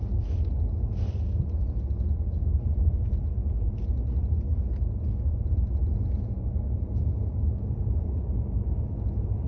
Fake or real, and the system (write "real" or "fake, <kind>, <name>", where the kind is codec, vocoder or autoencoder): real